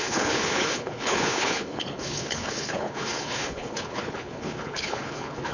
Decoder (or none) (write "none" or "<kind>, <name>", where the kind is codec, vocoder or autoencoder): codec, HILCodec